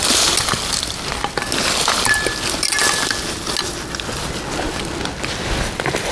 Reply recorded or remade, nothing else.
recorded